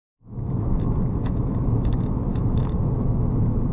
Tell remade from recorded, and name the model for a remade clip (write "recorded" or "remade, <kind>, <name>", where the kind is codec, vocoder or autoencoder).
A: remade, autoencoder, DAC-VAE